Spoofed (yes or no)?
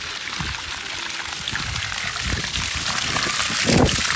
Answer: no